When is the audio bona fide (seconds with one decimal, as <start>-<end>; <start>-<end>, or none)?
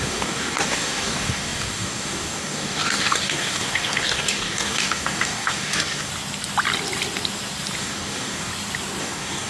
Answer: 6.1-7.8; 8.5-9.0